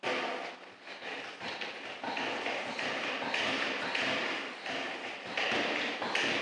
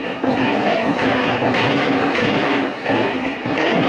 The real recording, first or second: first